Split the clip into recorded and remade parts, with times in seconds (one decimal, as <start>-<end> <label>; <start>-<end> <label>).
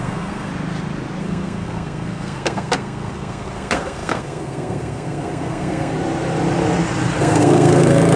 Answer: 0.0-0.5 remade; 0.5-1.2 recorded; 1.2-5.9 remade; 5.9-7.2 recorded; 7.2-8.2 remade